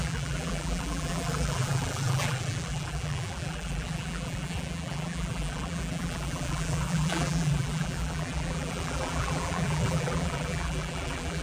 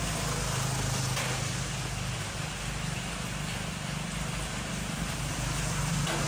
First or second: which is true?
second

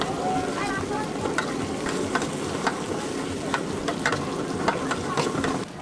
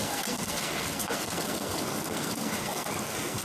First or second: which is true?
first